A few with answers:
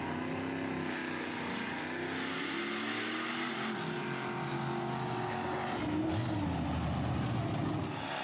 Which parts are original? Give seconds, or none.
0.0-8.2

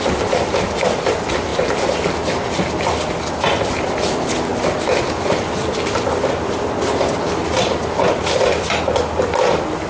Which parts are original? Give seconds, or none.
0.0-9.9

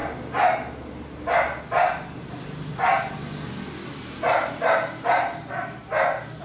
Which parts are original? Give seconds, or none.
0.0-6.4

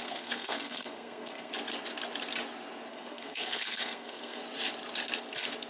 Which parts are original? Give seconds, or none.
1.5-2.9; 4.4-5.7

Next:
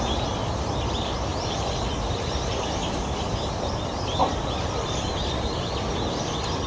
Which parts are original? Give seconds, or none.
0.0-6.7